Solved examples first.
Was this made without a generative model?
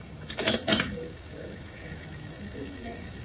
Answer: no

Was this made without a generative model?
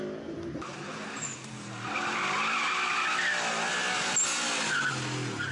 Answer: yes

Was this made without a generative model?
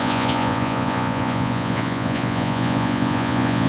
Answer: no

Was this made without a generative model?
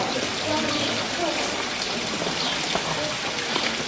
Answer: yes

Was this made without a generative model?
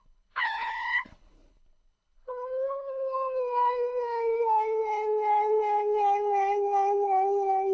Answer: no